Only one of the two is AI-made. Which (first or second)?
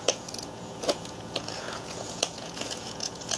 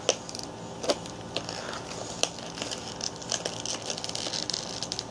first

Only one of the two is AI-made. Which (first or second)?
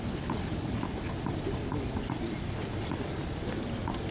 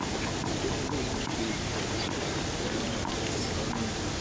first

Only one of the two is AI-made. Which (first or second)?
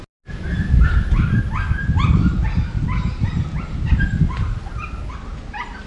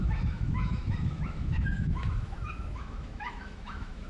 second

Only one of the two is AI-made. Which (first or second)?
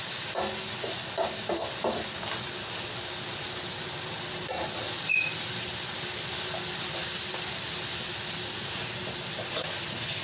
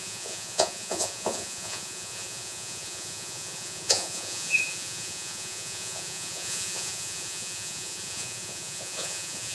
second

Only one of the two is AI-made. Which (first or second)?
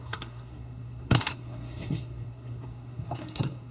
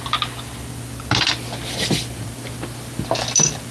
first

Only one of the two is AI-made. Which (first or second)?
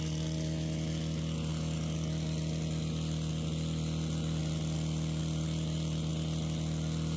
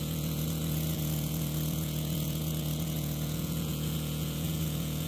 second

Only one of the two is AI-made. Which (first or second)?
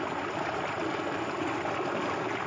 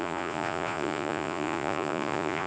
second